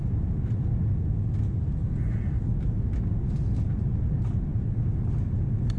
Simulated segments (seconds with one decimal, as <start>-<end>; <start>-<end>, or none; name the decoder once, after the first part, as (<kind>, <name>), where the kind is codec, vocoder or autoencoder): none